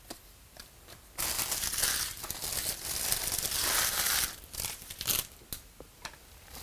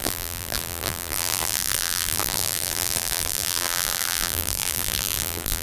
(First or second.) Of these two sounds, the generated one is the second